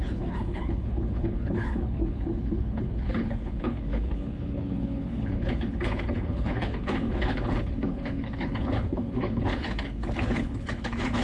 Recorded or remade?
remade